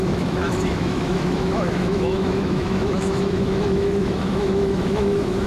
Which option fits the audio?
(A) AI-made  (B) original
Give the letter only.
A